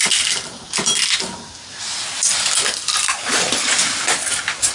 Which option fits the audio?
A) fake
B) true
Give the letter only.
B